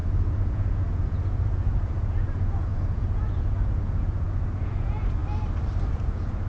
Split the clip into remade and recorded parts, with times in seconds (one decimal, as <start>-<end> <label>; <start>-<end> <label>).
0.0-5.2 remade; 5.2-5.9 recorded; 5.9-6.5 remade